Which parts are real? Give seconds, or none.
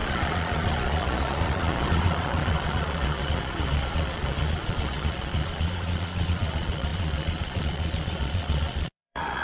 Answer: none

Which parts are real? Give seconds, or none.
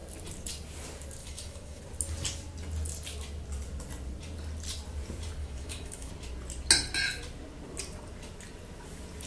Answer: 0.0-1.2; 1.8-5.4; 6.1-9.3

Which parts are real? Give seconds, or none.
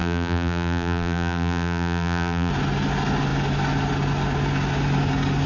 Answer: 2.5-5.5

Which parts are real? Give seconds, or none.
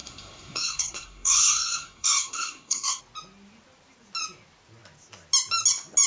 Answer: 3.0-6.1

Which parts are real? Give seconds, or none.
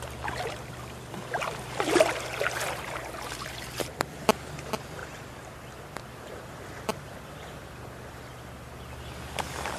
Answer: 5.0-9.4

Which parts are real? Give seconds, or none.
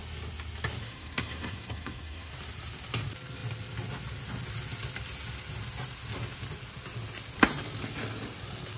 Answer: 0.0-0.8; 2.3-8.8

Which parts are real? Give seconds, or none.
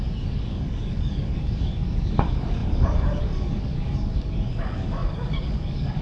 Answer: none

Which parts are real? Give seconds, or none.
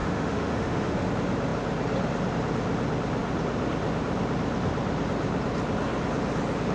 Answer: 1.1-6.7